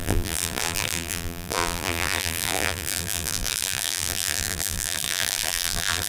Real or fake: fake